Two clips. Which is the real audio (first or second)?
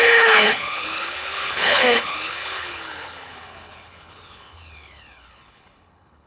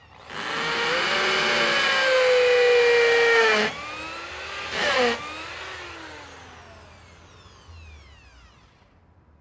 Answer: second